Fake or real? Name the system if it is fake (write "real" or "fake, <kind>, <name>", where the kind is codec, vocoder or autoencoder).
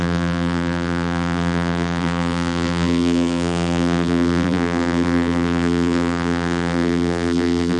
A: fake, vocoder, BigVGAN v2